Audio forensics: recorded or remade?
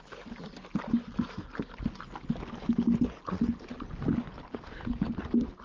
recorded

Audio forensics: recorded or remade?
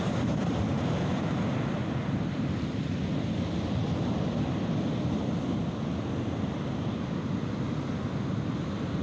recorded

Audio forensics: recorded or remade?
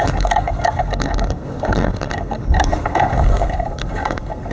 remade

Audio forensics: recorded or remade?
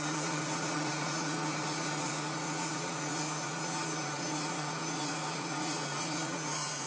remade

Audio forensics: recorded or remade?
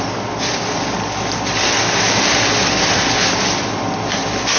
recorded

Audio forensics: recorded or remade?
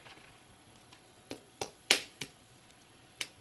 remade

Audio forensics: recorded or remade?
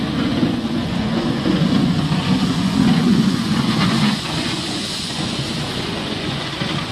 remade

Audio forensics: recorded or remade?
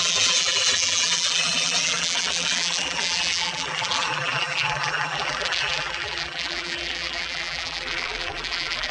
remade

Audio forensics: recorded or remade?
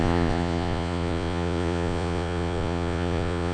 remade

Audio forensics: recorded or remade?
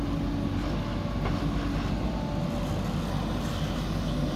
recorded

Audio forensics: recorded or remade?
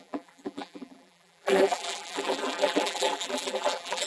remade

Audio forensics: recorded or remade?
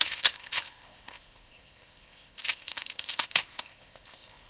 remade